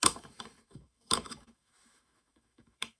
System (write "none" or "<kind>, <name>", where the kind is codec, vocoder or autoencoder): autoencoder, DAC-VAE